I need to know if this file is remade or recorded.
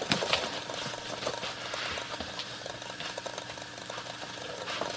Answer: recorded